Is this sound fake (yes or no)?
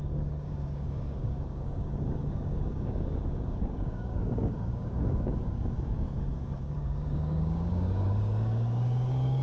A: yes